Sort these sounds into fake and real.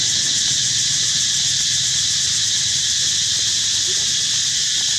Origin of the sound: real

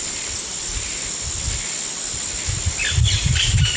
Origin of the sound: real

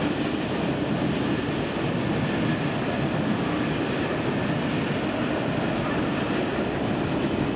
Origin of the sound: real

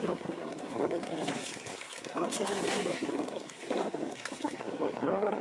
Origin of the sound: fake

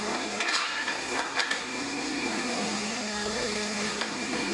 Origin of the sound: fake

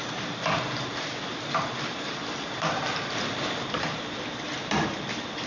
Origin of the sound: fake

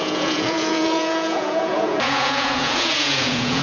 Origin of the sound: fake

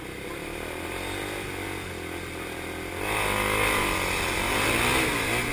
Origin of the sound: real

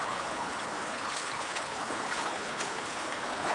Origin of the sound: fake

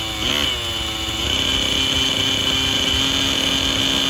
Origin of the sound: real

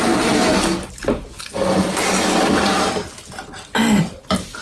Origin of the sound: real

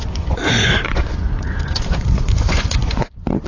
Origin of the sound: fake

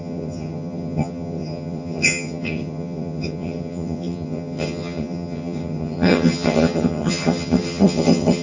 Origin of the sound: fake